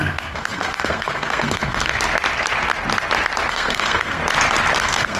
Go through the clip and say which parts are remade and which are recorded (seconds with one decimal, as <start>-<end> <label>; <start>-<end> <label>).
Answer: 0.0-1.9 remade; 1.9-3.5 recorded; 3.5-4.2 remade; 4.2-4.8 recorded; 4.8-5.2 remade